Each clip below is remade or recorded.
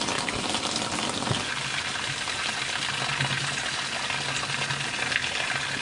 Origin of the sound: recorded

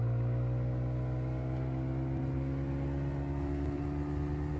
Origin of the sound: recorded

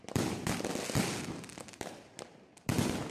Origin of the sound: recorded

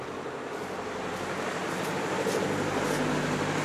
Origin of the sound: recorded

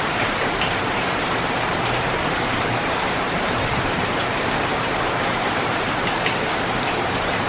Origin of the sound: remade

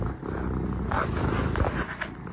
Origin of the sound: recorded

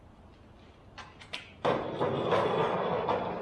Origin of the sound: recorded